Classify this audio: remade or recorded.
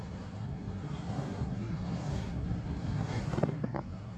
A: remade